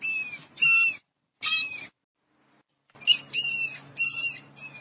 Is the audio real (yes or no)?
yes